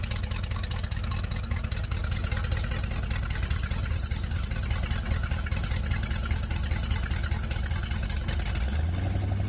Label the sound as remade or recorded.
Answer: recorded